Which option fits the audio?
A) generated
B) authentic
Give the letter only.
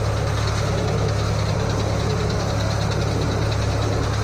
B